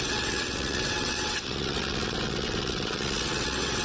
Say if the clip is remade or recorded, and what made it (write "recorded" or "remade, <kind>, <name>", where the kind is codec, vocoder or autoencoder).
remade, vocoder, WaveNeXt